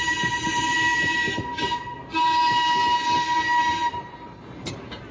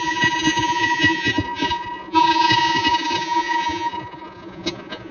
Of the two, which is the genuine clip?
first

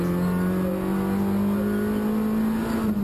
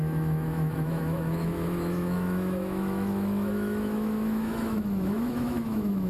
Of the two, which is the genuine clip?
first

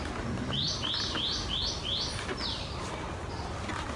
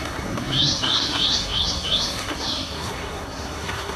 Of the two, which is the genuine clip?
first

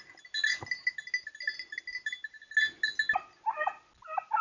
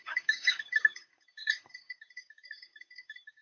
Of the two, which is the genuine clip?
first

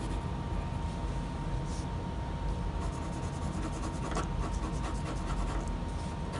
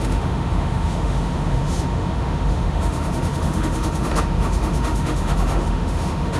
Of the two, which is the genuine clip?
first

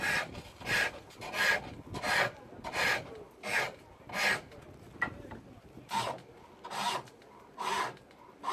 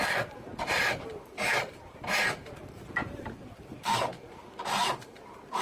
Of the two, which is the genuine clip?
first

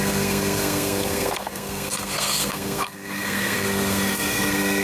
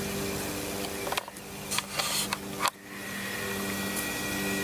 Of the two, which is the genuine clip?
second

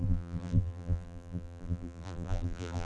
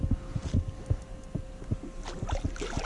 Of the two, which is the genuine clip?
second